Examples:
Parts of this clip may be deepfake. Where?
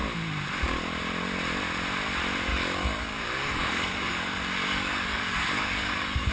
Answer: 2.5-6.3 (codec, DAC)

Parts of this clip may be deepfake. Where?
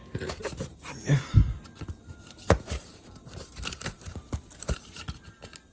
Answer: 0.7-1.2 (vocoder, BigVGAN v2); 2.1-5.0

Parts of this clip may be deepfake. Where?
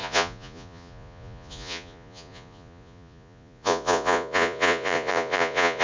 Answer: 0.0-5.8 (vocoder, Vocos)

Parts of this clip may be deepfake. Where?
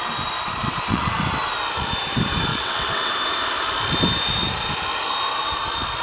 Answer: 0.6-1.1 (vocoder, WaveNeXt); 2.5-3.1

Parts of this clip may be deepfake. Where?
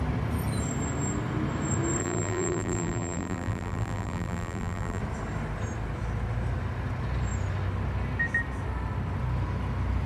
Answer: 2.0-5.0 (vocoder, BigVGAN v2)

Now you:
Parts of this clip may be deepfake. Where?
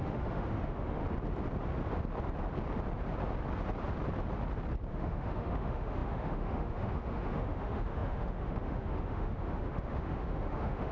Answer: 0.0-1.0 (autoencoder, DAC-VAE); 4.9-10.9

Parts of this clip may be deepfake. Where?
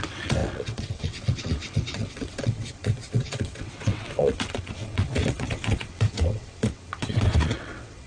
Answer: 0.0-8.1 (vocoder, WaveNeXt)